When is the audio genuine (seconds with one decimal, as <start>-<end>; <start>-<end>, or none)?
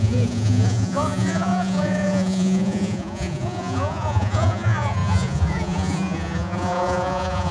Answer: none